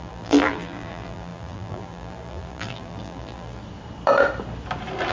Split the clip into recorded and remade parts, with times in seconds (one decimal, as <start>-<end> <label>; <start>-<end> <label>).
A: 0.0-3.6 remade; 3.6-5.1 recorded